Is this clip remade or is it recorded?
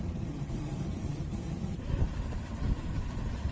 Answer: remade